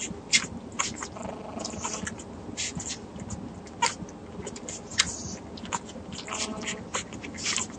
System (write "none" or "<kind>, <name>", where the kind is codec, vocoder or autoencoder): none